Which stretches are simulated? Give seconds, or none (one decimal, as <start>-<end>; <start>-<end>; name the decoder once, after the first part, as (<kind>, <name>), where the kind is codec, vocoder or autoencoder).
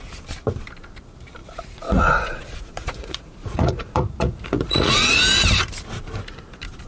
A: 1.4-5.2 (vocoder, Vocos)